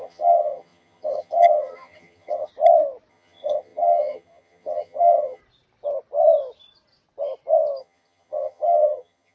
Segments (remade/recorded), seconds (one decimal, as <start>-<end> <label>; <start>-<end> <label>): 0.0-2.5 remade; 2.5-3.1 recorded; 3.1-5.4 remade; 5.4-7.8 recorded; 7.8-9.3 remade